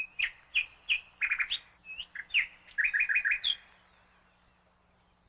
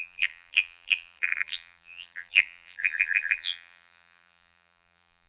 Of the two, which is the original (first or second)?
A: first